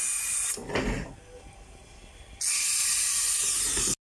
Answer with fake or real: real